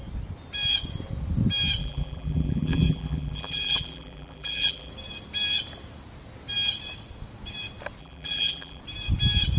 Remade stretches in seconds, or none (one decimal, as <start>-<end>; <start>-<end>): 1.8-4.9; 8.0-8.8